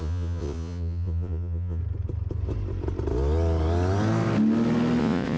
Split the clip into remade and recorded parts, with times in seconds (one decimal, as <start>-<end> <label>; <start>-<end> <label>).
0.0-1.8 remade; 1.8-5.0 recorded; 5.0-5.4 remade